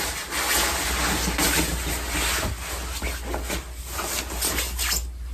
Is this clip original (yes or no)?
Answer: yes